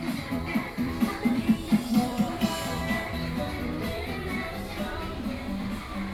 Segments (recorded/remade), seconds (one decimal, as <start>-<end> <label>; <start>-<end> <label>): 0.0-2.8 remade; 2.8-3.4 recorded; 3.4-6.1 remade